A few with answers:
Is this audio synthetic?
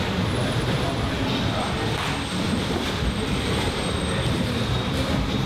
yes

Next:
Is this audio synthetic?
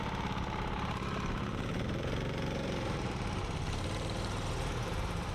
yes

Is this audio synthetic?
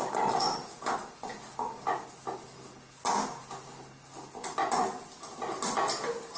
no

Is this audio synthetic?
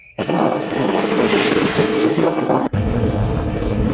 yes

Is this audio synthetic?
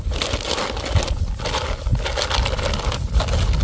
no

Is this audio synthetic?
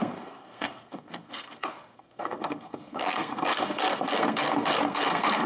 yes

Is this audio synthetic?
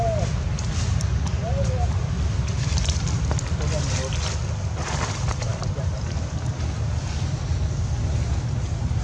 no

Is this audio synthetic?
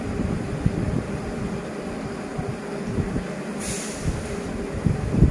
no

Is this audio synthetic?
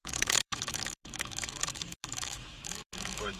yes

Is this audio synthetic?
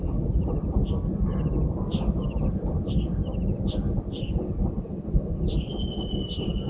no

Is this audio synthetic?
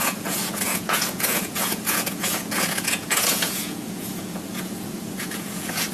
yes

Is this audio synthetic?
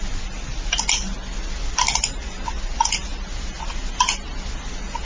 no